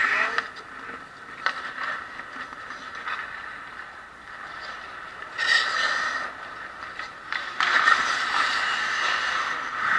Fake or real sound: real